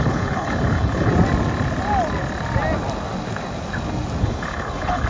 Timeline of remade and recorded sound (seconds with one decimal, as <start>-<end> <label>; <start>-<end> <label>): 0.0-1.1 remade; 1.1-4.2 recorded; 4.2-5.1 remade